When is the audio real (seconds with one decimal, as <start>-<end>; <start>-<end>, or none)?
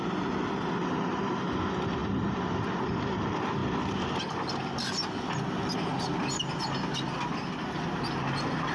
0.0-8.7